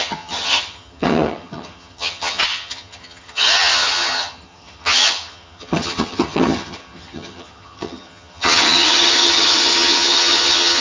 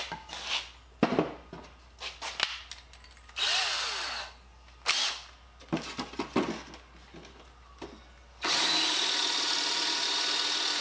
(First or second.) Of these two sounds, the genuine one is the second